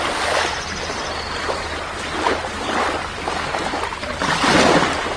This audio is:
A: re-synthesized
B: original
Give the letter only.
B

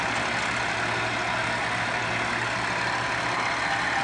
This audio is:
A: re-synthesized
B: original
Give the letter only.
B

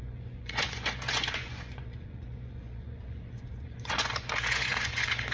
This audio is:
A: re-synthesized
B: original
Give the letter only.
A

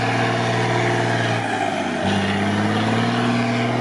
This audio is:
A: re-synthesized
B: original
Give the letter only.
B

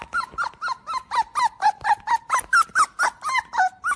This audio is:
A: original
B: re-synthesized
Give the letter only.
A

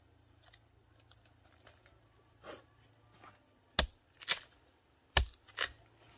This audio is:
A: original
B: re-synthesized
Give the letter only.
A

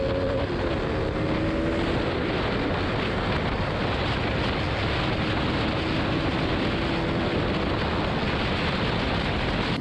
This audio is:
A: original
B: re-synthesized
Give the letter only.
A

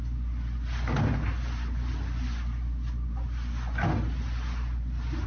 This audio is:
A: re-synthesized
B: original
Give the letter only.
B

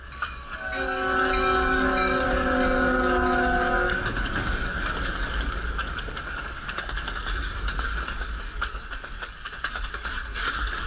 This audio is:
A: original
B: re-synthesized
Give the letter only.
B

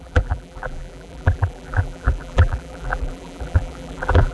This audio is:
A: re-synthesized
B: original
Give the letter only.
A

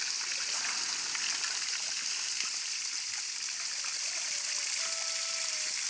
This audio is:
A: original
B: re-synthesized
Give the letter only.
A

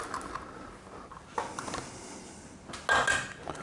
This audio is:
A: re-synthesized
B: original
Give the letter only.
B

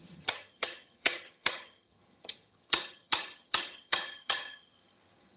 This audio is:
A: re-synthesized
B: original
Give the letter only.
A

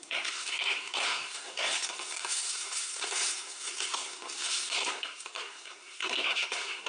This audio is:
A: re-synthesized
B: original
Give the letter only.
A